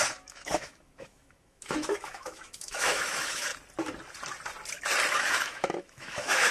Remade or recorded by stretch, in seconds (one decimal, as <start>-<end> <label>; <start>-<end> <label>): 0.0-3.5 remade; 3.5-5.1 recorded; 5.1-6.5 remade